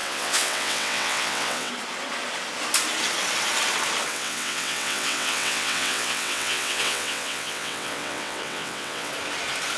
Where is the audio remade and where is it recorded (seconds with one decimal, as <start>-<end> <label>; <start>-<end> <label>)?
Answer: 0.0-1.7 remade; 1.7-4.1 recorded; 4.1-9.1 remade; 9.1-9.8 recorded